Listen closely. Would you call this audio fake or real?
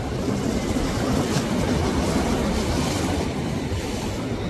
real